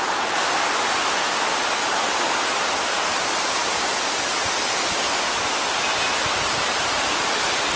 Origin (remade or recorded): recorded